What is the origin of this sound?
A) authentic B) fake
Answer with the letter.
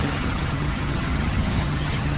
B